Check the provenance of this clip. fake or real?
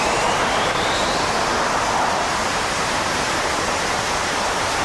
real